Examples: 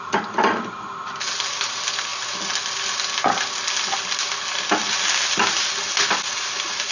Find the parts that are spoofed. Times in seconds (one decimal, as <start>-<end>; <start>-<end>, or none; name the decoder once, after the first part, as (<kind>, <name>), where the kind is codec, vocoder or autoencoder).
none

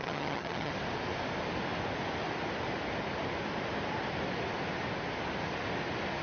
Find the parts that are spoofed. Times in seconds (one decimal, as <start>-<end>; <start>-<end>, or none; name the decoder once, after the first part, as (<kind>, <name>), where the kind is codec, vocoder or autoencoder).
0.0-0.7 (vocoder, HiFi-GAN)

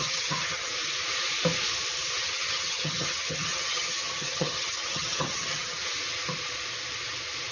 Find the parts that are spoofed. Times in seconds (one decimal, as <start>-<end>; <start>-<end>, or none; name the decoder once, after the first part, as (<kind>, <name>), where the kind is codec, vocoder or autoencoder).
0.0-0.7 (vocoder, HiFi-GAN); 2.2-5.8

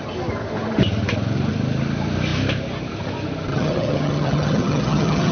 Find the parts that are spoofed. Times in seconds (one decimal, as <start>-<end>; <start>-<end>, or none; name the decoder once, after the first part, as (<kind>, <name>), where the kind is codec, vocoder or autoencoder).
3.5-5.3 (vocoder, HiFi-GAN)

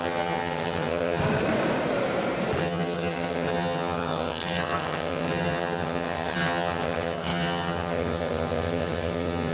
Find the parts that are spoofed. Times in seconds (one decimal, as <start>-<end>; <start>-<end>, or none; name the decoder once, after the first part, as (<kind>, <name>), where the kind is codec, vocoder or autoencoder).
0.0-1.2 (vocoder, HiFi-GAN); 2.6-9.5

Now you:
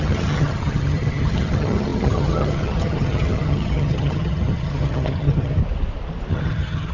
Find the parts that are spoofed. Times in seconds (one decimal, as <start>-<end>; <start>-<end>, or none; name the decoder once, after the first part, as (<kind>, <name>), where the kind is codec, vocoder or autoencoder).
0.0-5.6 (vocoder, HiFi-GAN); 6.3-6.9

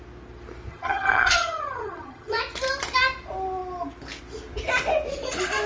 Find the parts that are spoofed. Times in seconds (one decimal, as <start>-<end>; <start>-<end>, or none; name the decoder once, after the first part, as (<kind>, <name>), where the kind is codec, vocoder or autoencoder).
0.7-2.4 (vocoder, HiFi-GAN)